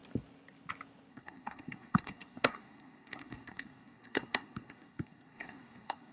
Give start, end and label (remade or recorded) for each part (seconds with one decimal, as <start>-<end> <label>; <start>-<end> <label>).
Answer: 0.0-1.1 recorded; 1.1-6.1 remade

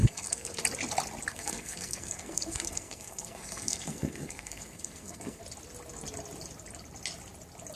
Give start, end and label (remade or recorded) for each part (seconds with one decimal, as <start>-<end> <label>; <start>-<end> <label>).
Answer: 0.0-0.6 remade; 0.6-1.3 recorded; 1.3-5.4 remade; 5.4-7.8 recorded

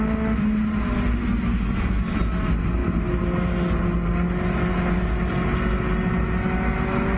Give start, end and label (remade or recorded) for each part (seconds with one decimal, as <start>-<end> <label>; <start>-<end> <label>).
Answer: 0.0-7.2 recorded

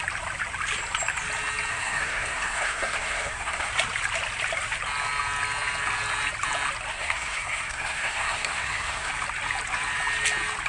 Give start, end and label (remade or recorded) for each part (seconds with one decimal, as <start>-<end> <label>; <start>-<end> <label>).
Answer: 0.0-1.7 recorded; 1.7-3.7 remade; 3.7-6.9 recorded; 6.9-9.1 remade; 9.1-10.7 recorded

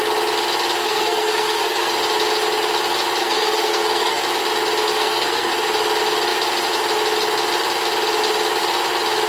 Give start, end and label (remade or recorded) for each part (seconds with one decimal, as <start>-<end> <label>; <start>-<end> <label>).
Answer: 0.0-0.8 recorded; 0.8-1.9 remade; 1.9-3.2 recorded; 3.2-4.2 remade; 4.2-4.9 recorded; 4.9-5.5 remade; 5.5-9.3 recorded

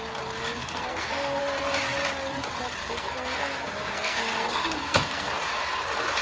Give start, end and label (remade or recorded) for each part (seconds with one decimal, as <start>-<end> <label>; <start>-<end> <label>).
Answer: 0.0-0.6 recorded; 0.6-1.4 remade; 1.4-2.8 recorded; 2.8-5.3 remade; 5.3-6.2 recorded

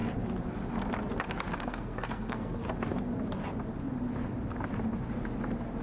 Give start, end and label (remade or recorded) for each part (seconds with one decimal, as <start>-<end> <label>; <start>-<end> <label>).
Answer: 0.0-1.6 recorded; 1.6-2.6 remade; 2.6-5.8 recorded